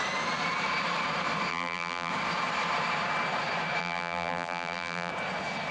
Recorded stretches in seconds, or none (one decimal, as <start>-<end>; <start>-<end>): 0.0-1.5; 2.1-3.8; 5.1-5.7

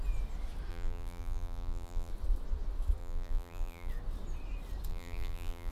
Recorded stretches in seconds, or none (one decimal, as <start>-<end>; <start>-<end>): 0.0-0.7; 2.1-3.0; 3.9-4.9

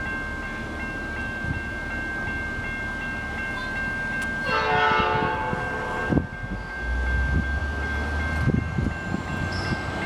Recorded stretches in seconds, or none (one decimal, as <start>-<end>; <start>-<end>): 0.0-10.1

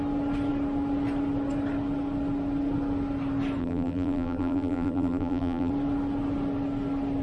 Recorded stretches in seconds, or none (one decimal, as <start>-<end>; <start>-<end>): 0.0-3.6; 5.7-7.2

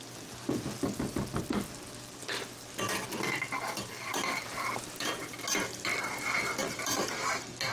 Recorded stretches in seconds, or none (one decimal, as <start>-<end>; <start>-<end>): 0.0-6.6

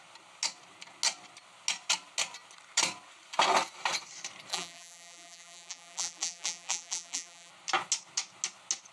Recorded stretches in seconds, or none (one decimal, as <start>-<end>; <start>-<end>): 0.0-4.5; 7.5-8.9

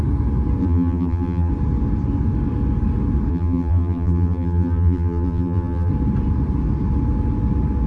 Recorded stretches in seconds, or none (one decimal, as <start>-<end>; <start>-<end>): 0.0-0.6; 1.5-3.3; 5.9-7.9